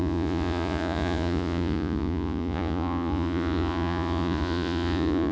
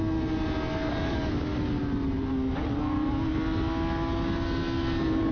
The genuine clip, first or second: second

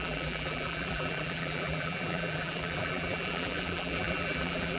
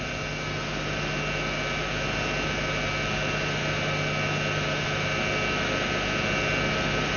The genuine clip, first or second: second